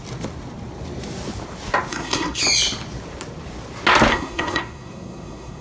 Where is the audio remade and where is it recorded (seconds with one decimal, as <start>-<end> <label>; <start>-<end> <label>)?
0.0-1.9 recorded; 1.9-2.4 remade; 2.4-4.1 recorded; 4.1-5.6 remade